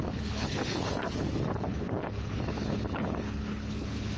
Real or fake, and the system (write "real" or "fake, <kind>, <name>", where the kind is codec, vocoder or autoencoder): fake, codec, HILCodec